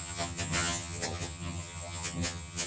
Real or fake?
fake